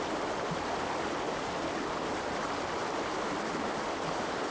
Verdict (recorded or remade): recorded